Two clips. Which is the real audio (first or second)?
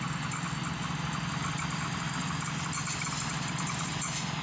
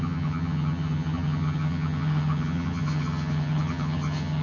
first